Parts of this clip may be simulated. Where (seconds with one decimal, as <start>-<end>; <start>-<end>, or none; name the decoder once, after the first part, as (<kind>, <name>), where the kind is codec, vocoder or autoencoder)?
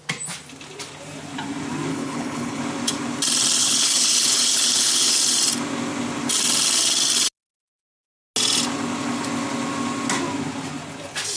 1.9-2.6 (codec, HILCodec); 3.6-5.2